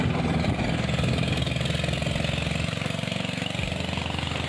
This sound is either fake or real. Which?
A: real